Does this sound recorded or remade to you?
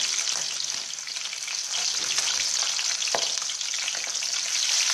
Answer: recorded